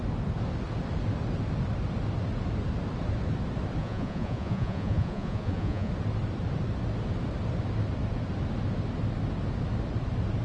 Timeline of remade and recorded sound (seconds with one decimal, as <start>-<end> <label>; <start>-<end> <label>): 0.0-3.8 recorded; 3.8-5.9 remade; 5.9-10.4 recorded